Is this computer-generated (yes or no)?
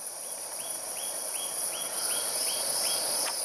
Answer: yes